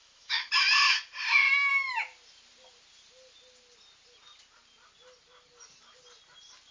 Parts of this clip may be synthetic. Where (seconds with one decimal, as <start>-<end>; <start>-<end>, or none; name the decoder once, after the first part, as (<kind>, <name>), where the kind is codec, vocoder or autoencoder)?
0.0-0.5 (autoencoder, DAC-VAE)